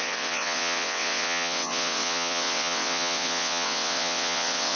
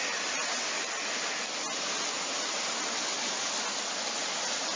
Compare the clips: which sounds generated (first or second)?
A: first